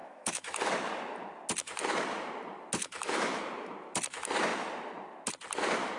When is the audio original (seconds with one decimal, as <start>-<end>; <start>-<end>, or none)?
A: 0.7-2.8; 3.4-6.0